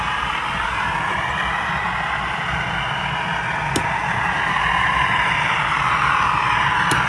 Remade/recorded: recorded